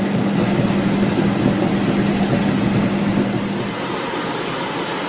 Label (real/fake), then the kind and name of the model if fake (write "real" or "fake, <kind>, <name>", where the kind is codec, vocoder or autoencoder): real